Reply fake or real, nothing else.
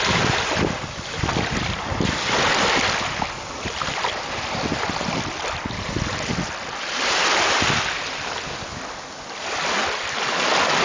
real